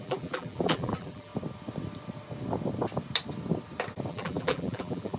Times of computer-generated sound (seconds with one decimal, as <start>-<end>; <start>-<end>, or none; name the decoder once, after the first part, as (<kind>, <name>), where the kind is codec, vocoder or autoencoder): 0.0-1.3 (vocoder, BigVGAN v2); 4.1-5.2